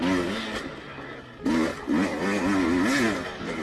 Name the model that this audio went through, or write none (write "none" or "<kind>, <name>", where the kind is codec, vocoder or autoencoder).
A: none